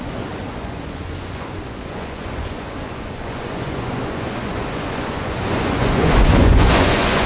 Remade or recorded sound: remade